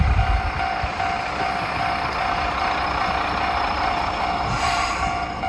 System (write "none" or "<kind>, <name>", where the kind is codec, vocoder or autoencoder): none